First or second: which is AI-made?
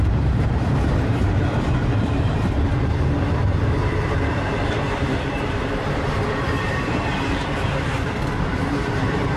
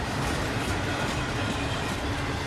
first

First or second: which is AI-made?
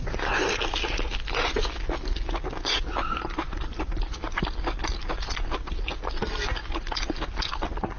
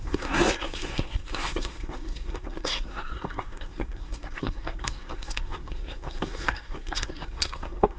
second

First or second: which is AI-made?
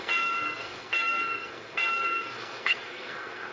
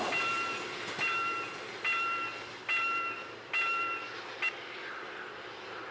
first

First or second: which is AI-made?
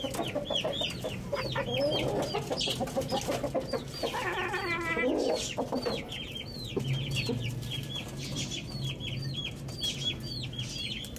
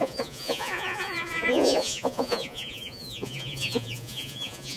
second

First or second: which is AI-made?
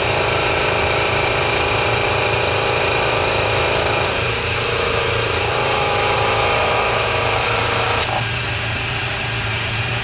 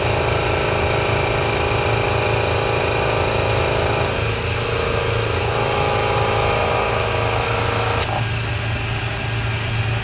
first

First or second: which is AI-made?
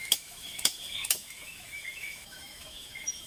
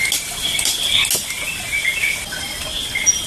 first